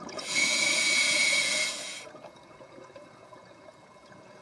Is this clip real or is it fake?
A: fake